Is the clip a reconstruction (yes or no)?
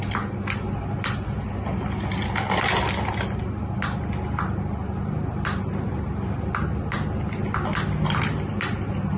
no